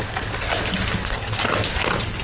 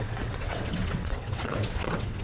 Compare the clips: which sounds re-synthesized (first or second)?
second